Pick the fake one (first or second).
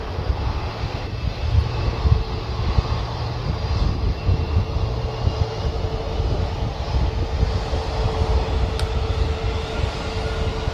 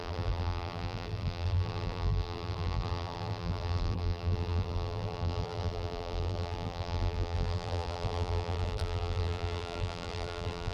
second